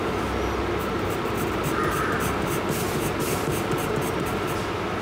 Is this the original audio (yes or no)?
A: yes